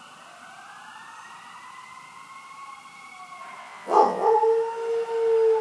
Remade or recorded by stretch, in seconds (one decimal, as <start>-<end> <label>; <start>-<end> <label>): 0.0-3.6 recorded; 3.6-4.3 remade; 4.3-5.6 recorded